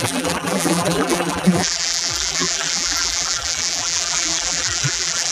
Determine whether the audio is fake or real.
fake